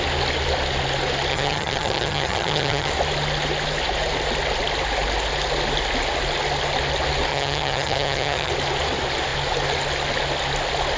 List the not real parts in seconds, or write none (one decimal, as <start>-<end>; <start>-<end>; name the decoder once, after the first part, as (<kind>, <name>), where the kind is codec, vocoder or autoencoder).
1.3-2.9 (vocoder, HiFi-GAN); 7.3-8.5